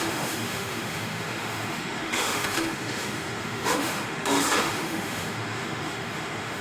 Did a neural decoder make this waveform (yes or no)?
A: yes